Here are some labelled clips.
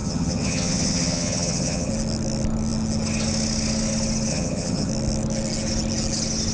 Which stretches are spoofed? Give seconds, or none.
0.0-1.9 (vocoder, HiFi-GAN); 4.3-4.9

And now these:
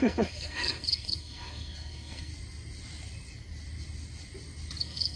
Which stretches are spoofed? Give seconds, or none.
0.0-2.3 (codec, SNAC); 4.8-5.2